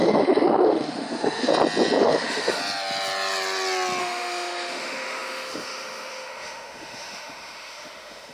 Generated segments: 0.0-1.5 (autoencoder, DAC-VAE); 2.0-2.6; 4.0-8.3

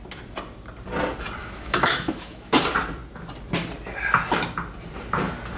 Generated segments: 1.4-2.5 (autoencoder, DAC-VAE)

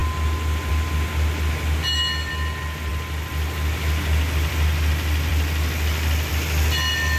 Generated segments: none

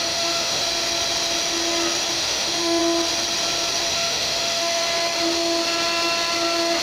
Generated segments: 0.0-0.6 (autoencoder, DAC-VAE); 2.1-2.8; 3.9-4.8

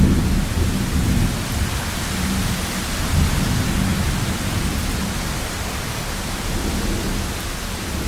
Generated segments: none

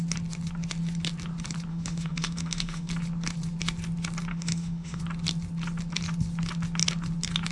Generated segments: 1.7-2.9 (autoencoder, DAC-VAE); 4.3-5.0